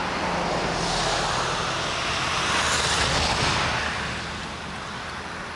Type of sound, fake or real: real